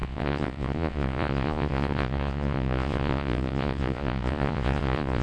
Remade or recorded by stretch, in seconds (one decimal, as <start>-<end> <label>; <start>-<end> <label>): 0.0-5.2 remade